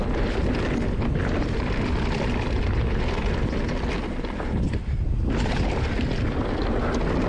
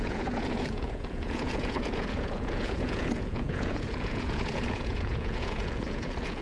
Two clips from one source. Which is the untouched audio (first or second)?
first